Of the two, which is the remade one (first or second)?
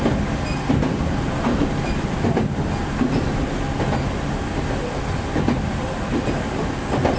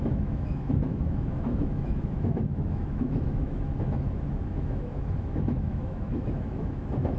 second